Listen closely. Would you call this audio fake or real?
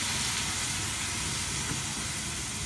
real